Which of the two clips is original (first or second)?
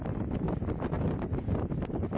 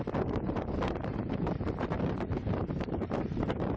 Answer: first